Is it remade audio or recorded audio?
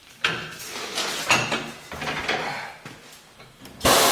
recorded